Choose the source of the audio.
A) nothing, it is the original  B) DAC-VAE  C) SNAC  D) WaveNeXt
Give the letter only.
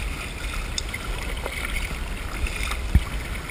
A